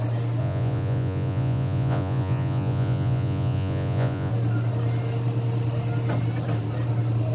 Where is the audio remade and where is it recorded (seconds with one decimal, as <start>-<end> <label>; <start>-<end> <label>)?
0.0-0.4 recorded; 0.4-4.3 remade; 4.3-7.3 recorded